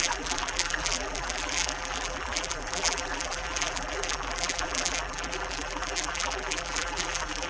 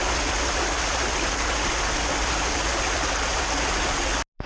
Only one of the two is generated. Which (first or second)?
first